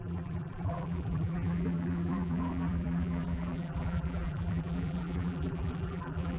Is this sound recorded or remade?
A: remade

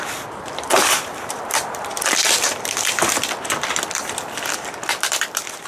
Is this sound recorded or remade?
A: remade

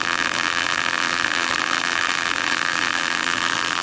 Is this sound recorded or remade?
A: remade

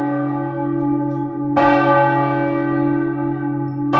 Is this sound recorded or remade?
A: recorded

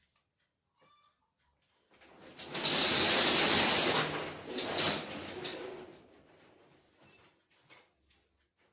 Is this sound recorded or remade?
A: recorded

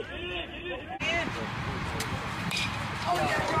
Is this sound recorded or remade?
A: remade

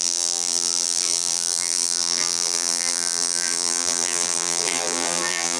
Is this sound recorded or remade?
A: remade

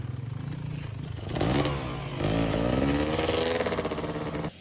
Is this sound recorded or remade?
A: recorded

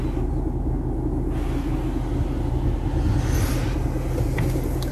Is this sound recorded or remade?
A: recorded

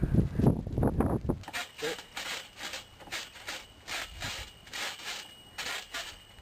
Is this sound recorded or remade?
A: recorded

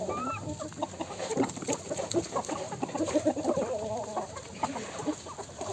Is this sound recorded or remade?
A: recorded